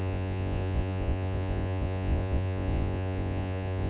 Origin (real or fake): fake